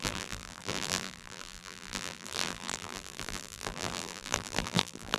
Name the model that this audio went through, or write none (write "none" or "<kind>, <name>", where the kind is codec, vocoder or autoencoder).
vocoder, BigVGAN v2